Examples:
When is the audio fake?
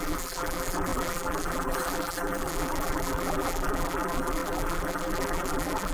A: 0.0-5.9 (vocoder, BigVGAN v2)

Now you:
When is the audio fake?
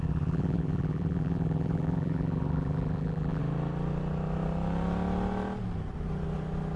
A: 0.0-3.4 (vocoder, BigVGAN v2)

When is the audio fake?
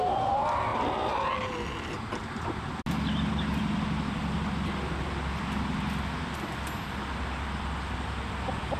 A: none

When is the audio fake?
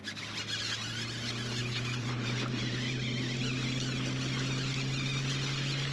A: 1.6-3.4 (vocoder, BigVGAN v2)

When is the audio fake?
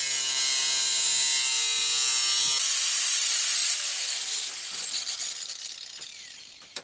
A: 3.6-4.9 (vocoder, BigVGAN v2); 6.1-6.8